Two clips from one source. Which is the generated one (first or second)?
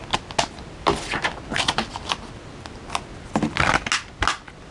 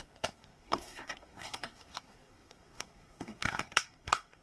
second